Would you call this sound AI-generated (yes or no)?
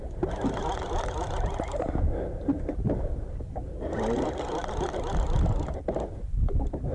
no